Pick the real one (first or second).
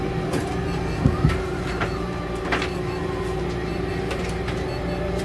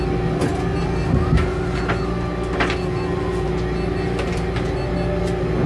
second